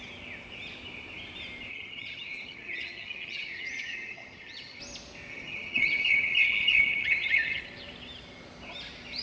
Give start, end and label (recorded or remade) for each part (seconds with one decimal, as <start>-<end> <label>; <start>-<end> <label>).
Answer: 0.0-1.7 recorded; 1.7-4.8 remade; 4.8-5.3 recorded; 5.3-7.6 remade; 7.6-9.2 recorded